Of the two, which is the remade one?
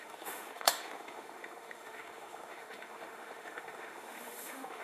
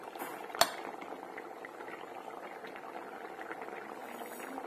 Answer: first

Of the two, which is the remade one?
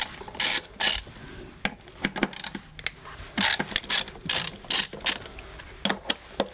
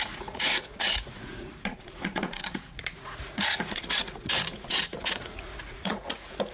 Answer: second